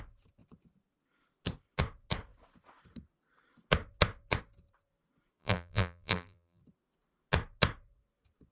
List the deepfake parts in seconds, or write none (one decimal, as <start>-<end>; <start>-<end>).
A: 5.4-6.6